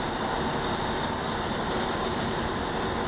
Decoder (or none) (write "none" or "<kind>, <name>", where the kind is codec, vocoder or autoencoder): none